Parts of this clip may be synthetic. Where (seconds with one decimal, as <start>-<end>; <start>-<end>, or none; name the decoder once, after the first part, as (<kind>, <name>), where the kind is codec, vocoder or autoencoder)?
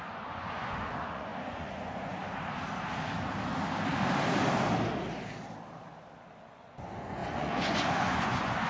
0.0-2.2 (vocoder, Vocos); 6.5-8.7